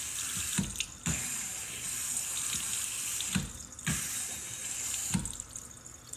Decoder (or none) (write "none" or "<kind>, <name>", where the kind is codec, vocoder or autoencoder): none